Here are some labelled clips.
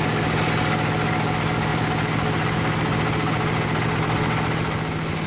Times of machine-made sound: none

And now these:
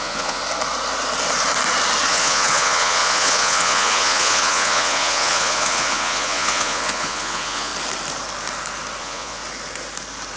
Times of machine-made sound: 0.0-0.4 (vocoder, Vocos); 2.1-7.7; 9.0-9.4